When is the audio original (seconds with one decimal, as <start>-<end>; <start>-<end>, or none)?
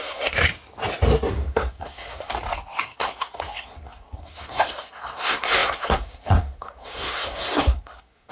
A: 0.5-1.3; 2.3-2.8